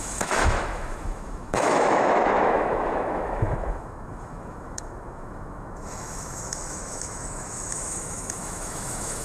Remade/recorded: remade